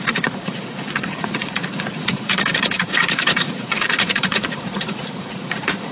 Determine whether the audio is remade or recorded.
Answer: remade